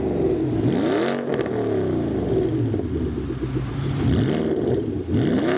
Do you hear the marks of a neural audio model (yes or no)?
no